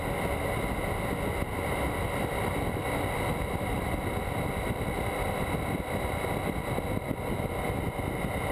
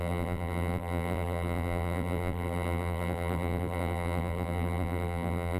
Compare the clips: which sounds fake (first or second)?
second